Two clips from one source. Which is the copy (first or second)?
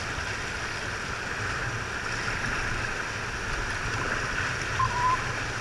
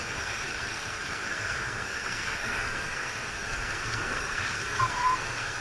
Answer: second